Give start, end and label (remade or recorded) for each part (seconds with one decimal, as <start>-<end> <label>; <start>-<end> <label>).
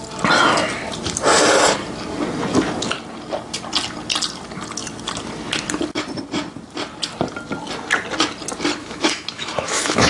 0.0-8.8 recorded; 8.8-10.1 remade